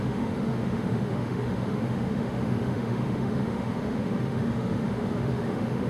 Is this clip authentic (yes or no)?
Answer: no